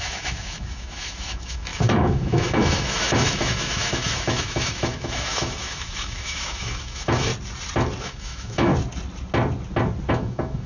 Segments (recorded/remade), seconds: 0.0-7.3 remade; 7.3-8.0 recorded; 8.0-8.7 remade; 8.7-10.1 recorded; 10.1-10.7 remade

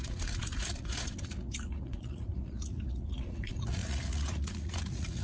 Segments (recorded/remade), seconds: 0.0-5.2 remade